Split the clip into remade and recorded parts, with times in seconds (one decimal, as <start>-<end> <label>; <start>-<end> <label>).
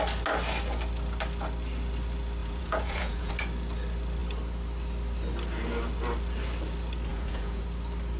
0.0-2.4 recorded; 2.4-3.3 remade; 3.3-7.1 recorded; 7.1-7.6 remade; 7.6-8.2 recorded